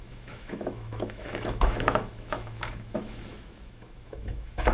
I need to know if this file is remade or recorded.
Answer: remade